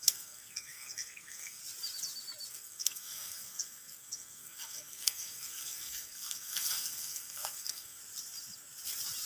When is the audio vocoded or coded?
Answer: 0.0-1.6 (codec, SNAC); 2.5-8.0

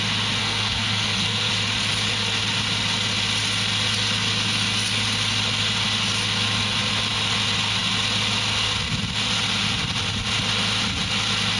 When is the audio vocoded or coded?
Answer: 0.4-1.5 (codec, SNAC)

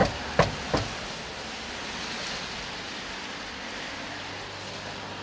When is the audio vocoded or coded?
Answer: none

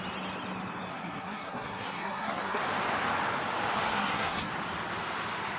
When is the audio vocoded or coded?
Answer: 0.9-2.6 (codec, SNAC); 3.9-4.5

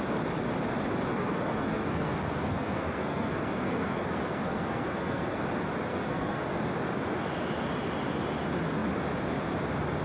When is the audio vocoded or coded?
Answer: 1.1-5.4 (codec, SNAC); 5.9-6.6

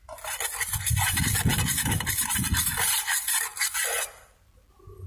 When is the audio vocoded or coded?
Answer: none

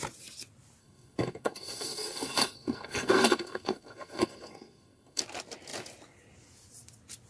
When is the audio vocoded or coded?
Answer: 0.8-5.2 (codec, SNAC)